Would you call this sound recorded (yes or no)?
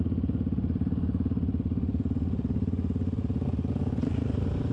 yes